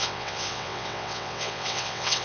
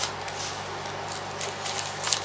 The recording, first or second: second